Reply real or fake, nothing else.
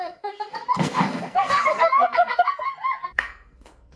fake